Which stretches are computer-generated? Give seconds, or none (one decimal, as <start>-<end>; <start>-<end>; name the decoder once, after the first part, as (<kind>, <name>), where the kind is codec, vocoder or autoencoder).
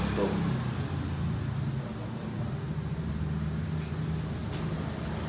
1.9-3.1 (vocoder, BigVGAN v2)